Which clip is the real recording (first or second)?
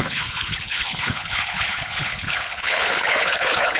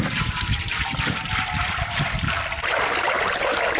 second